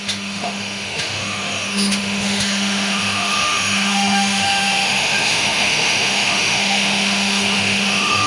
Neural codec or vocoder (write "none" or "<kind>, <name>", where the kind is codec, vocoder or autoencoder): autoencoder, DAC-VAE